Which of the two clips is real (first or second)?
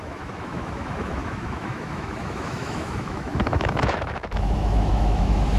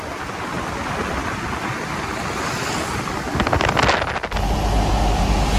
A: second